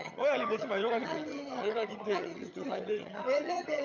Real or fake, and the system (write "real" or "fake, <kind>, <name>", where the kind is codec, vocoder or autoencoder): fake, vocoder, HiFi-GAN